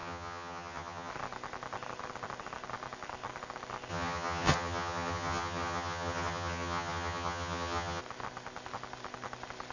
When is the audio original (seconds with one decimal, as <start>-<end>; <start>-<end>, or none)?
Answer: 1.1-3.9; 8.0-9.7